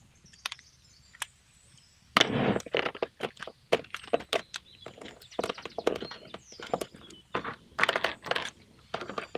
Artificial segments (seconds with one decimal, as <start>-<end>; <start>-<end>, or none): none